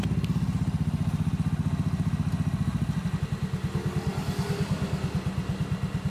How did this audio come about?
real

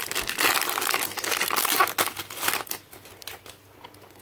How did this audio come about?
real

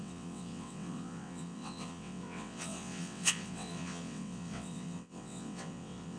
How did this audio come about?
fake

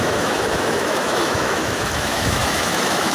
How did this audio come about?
fake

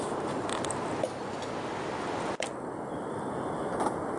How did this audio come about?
real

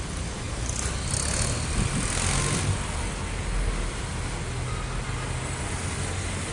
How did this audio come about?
real